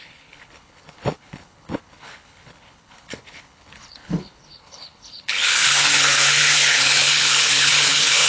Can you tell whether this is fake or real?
fake